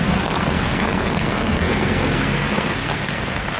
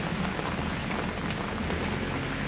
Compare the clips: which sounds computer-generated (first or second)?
first